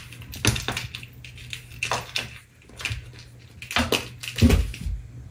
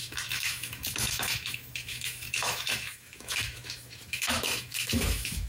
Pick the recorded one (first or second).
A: first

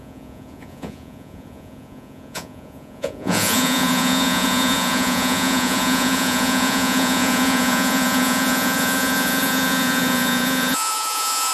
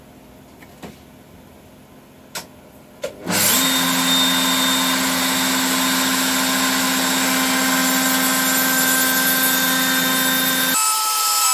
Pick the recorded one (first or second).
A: second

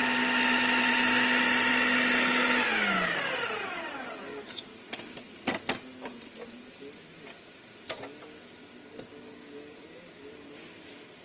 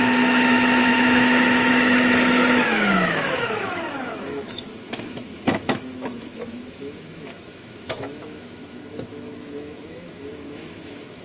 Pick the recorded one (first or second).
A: first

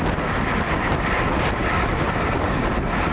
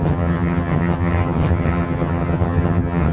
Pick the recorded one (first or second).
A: first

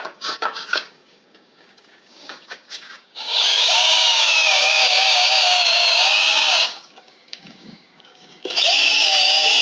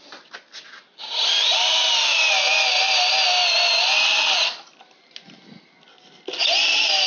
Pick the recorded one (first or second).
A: second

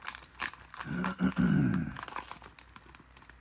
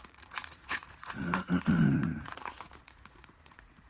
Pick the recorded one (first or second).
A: first